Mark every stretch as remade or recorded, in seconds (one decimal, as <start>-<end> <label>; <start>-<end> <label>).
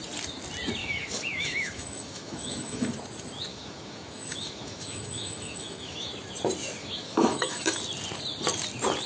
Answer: 0.0-0.8 recorded; 0.8-2.9 remade; 2.9-3.5 recorded; 3.5-6.1 remade; 6.1-6.8 recorded; 6.8-7.8 remade; 7.8-9.1 recorded